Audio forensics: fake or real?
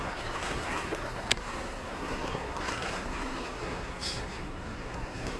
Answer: fake